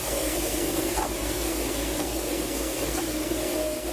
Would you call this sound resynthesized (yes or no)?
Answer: yes